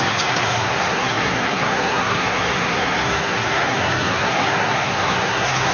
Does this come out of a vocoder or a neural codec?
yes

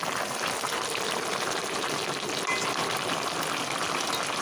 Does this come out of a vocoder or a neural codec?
no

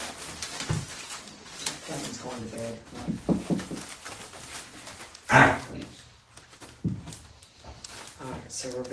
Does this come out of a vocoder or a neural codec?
no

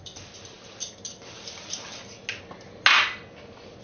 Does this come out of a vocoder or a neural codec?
no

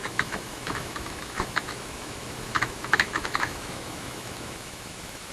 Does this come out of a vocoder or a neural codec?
yes